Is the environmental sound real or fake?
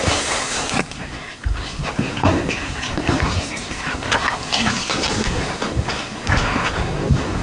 fake